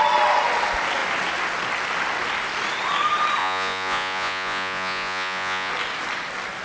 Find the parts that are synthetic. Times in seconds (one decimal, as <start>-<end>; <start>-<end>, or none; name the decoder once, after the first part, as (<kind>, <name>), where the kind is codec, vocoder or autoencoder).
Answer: 3.4-5.7 (vocoder, Vocos)